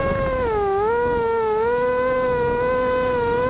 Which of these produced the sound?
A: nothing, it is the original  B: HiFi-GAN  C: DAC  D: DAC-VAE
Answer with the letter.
A